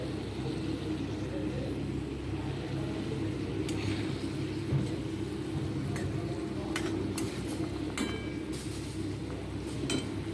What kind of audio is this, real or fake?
real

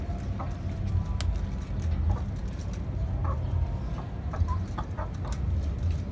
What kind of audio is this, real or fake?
real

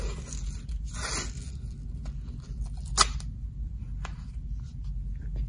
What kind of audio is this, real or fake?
real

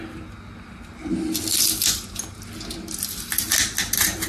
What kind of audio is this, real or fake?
real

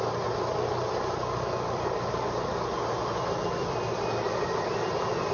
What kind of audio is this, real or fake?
real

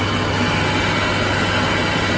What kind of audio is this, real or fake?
real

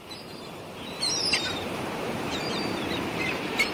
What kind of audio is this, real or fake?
fake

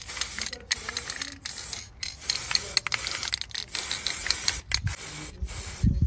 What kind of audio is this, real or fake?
real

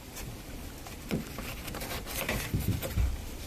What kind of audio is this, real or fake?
fake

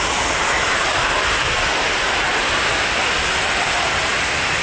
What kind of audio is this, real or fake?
real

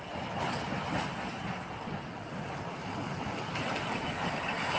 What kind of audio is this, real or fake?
real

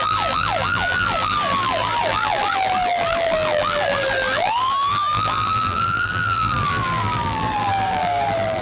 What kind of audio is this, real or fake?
fake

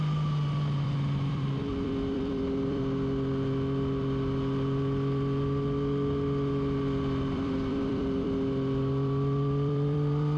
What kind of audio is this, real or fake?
fake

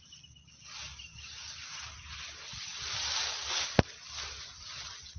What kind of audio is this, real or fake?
real